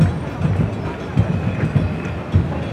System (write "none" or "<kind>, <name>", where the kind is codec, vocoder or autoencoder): none